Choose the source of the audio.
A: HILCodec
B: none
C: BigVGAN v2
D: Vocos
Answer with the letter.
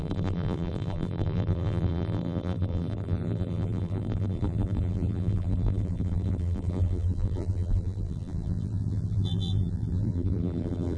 C